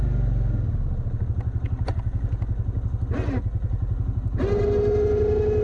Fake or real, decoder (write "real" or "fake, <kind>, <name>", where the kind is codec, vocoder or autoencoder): real